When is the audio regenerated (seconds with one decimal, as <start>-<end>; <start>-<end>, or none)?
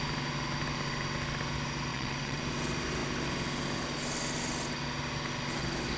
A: 1.9-2.4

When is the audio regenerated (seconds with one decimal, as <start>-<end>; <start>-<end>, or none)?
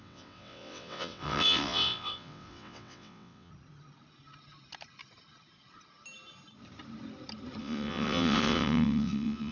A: 0.0-3.5; 7.6-9.5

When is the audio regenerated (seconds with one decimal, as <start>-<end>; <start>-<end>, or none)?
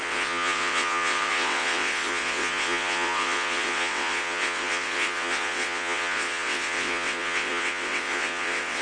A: 0.0-8.8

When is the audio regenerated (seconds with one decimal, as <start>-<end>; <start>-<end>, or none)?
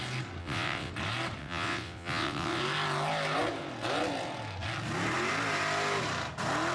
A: 0.4-0.9; 1.4-2.6